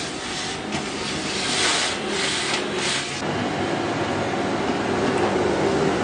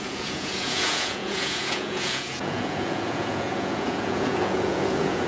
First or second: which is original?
first